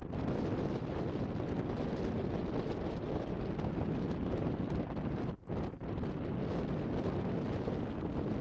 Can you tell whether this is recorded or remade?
recorded